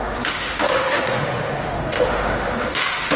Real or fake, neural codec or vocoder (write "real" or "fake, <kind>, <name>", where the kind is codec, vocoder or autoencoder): fake, autoencoder, DAC-VAE